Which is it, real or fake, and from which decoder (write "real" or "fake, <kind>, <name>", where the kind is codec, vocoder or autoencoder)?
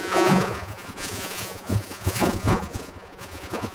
fake, vocoder, Vocos